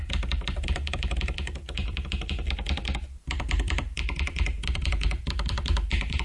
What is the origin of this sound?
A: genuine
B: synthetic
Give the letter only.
B